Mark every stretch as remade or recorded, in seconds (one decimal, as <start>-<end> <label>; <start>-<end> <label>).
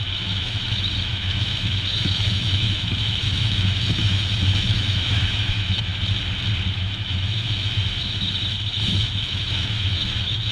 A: 0.0-5.9 remade; 5.9-6.7 recorded; 6.7-7.8 remade; 7.8-8.7 recorded; 8.7-10.5 remade